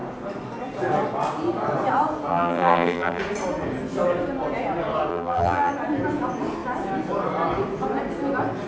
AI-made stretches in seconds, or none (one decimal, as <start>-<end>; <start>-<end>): 2.3-3.2; 5.1-5.7